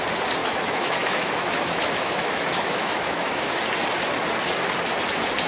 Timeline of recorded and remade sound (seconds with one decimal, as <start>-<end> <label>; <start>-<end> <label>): 0.0-0.4 recorded; 0.4-3.6 remade; 3.6-5.5 recorded